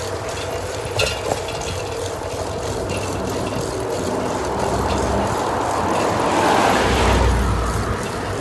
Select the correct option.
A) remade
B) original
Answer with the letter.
B